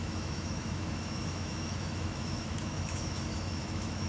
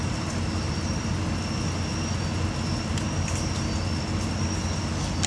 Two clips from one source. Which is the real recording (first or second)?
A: second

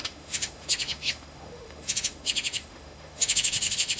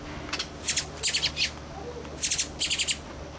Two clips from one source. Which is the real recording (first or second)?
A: second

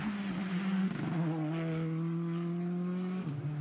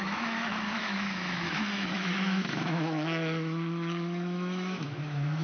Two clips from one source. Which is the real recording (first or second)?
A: first